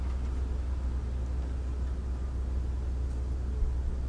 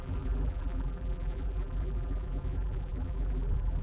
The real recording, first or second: first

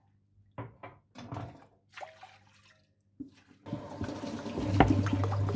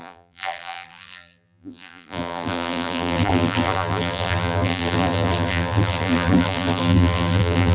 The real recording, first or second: first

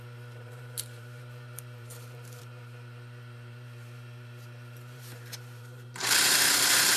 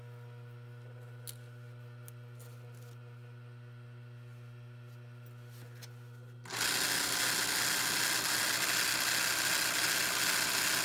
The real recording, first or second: second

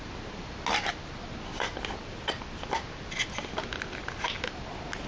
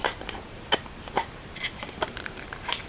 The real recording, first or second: first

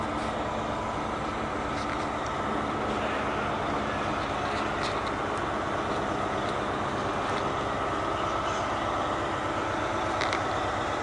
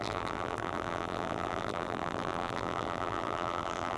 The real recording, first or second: first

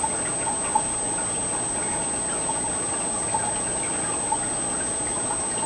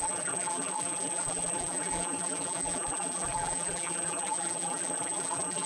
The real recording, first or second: first